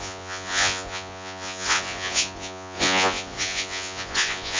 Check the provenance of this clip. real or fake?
fake